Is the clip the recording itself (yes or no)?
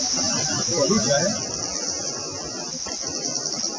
yes